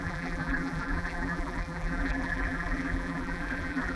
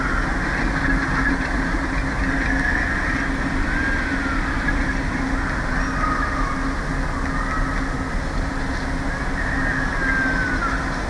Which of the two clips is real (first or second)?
second